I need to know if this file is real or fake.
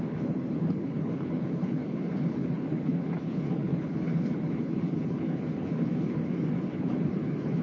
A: fake